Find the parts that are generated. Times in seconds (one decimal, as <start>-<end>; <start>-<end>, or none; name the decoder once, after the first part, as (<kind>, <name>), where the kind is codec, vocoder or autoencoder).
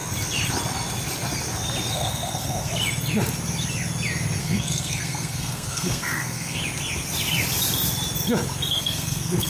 1.9-2.7 (codec, SNAC); 4.4-6.6; 8.7-9.5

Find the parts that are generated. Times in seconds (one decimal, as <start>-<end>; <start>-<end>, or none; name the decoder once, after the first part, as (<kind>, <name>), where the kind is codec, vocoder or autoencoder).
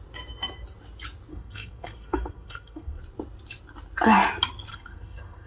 1.3-3.0 (codec, SNAC); 4.7-5.5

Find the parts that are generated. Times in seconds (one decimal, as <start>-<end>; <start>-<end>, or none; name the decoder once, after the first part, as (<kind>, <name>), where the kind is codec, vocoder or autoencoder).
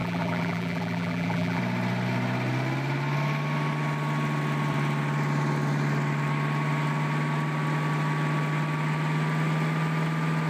0.0-1.6 (vocoder, BigVGAN v2)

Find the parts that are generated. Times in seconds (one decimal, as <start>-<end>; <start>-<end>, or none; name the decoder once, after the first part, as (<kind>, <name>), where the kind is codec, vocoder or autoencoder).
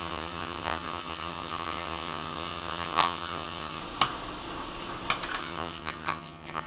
0.0-3.8 (vocoder, HiFi-GAN); 5.4-6.7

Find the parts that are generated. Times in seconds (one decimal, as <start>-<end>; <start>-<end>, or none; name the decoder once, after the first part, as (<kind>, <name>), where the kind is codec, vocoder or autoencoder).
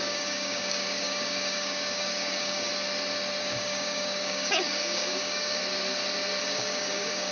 0.0-2.7 (codec, DAC); 3.4-5.6; 6.4-7.3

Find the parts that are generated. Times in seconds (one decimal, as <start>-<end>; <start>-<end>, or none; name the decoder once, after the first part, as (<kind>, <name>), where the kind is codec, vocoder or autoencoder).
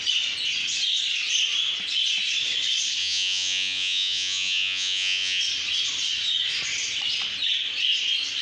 3.0-5.4 (vocoder, Vocos)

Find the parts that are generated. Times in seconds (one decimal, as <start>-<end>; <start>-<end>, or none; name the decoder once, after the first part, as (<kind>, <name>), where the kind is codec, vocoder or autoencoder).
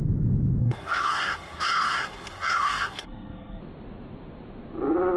0.6-3.6 (codec, SNAC)